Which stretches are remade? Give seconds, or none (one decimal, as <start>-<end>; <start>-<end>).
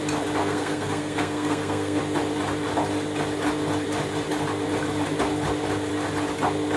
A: 0.4-2.0